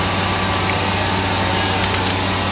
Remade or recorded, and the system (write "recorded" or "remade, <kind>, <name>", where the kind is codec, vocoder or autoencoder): recorded